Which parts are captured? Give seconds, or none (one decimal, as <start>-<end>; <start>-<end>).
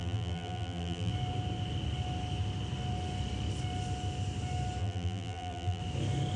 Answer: 1.1-4.8; 5.8-6.4